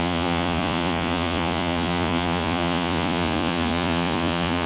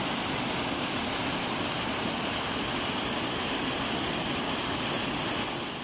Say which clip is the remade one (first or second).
first